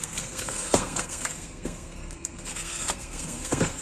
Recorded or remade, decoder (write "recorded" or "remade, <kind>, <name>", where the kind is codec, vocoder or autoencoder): remade, codec, SNAC